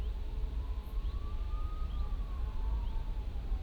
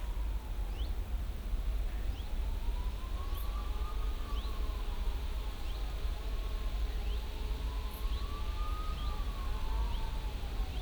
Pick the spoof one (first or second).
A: first